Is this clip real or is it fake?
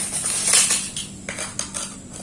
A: real